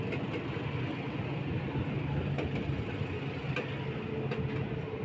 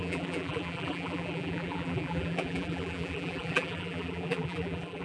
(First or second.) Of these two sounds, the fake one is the second